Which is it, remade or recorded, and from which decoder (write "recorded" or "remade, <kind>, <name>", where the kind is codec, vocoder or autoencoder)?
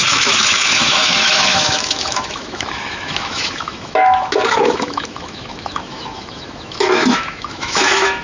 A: remade, autoencoder, DAC-VAE